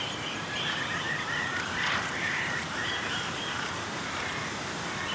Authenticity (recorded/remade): remade